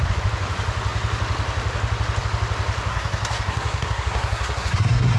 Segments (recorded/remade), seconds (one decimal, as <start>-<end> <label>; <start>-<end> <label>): 0.0-2.9 recorded; 2.9-5.2 remade